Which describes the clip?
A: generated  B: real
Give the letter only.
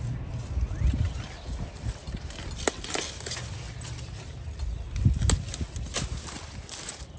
B